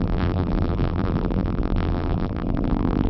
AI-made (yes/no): yes